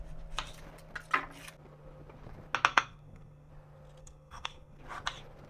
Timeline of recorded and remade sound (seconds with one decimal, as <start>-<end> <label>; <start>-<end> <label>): 0.0-2.7 recorded; 2.7-3.5 remade; 3.5-4.0 recorded; 4.0-4.8 remade; 4.8-5.5 recorded